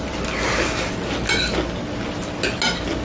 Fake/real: real